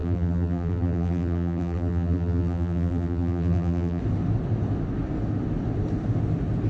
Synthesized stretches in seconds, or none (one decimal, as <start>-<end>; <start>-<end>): 0.0-4.0